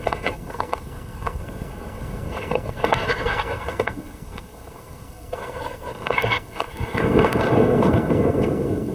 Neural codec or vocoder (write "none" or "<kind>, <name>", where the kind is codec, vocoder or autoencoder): codec, SNAC